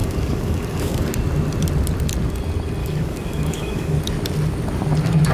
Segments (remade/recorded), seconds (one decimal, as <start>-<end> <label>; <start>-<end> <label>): 0.0-1.1 remade; 1.1-2.8 recorded; 2.8-4.0 remade; 4.0-5.3 recorded